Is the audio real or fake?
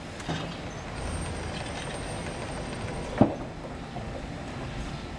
real